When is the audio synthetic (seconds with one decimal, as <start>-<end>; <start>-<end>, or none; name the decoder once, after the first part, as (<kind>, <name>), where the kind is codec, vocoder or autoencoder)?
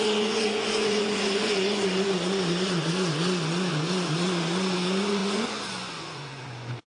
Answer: 0.0-6.9 (vocoder, Vocos)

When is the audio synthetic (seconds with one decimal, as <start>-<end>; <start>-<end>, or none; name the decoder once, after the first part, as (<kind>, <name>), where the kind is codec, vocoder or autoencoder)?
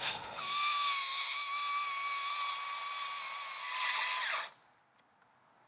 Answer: 0.0-2.3 (autoencoder, DAC-VAE)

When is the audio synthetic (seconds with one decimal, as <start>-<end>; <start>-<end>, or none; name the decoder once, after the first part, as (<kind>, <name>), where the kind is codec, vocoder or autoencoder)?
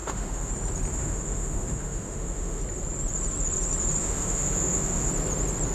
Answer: 0.0-0.5 (autoencoder, DAC-VAE); 0.9-2.6; 4.0-5.1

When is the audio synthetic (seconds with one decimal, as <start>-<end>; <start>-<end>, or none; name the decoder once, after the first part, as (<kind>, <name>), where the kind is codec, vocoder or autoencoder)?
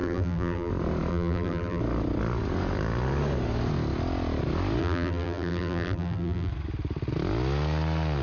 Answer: 0.0-0.7 (vocoder, BigVGAN v2); 1.1-1.8; 4.8-6.5